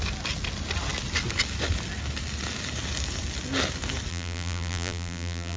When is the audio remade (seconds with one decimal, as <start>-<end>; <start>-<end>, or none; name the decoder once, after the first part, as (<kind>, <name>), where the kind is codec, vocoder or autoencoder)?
4.1-5.6 (vocoder, BigVGAN v2)